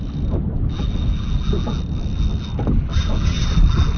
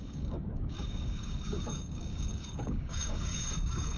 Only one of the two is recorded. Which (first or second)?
first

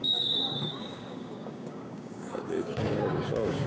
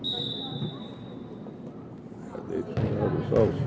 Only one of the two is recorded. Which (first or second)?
second